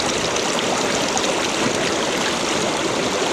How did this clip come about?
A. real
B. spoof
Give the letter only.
A